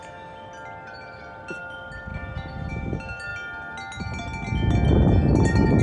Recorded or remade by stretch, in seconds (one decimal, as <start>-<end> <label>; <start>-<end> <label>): 0.0-5.8 recorded